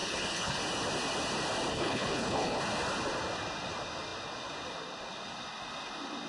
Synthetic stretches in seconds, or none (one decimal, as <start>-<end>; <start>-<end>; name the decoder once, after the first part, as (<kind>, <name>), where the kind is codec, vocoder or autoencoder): 0.0-0.6 (codec, HILCodec); 1.7-2.6